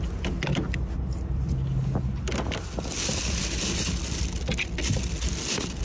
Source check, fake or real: real